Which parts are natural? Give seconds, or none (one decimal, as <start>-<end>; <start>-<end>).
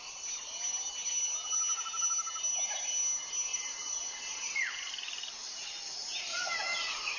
0.0-3.5; 4.9-6.3